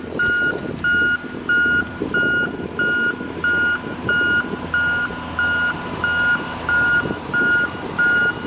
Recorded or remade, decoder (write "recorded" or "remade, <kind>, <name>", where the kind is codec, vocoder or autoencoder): recorded